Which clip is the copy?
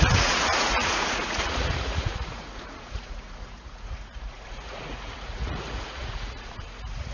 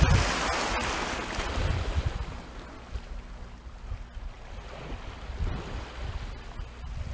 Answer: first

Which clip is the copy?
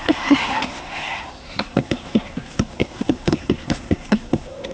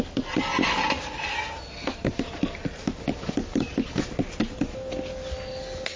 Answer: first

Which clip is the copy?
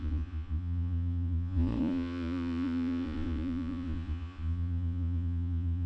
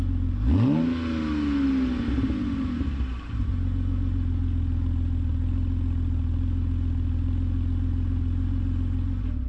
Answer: first